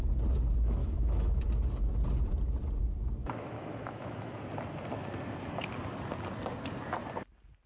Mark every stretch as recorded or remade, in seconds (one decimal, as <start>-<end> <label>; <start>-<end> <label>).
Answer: 0.0-0.8 recorded; 0.8-1.4 remade; 1.4-3.2 recorded; 3.2-4.4 remade; 4.4-7.7 recorded